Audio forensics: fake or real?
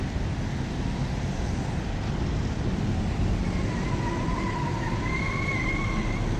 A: real